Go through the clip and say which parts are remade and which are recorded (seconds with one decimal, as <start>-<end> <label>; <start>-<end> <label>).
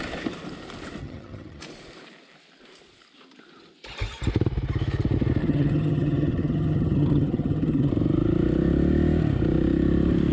0.0-1.0 recorded; 1.0-1.6 remade; 1.6-5.4 recorded; 5.4-7.9 remade; 7.9-10.3 recorded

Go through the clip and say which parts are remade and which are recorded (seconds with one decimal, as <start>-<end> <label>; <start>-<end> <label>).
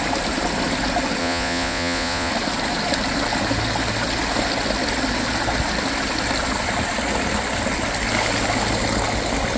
0.0-1.2 recorded; 1.2-2.3 remade; 2.3-9.6 recorded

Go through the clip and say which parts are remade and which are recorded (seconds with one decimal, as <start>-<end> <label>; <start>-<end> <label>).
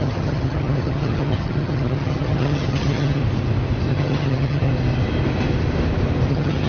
0.0-3.2 remade; 3.2-3.9 recorded; 3.9-4.7 remade; 4.7-6.3 recorded; 6.3-6.7 remade